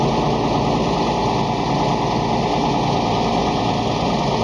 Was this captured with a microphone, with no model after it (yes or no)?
yes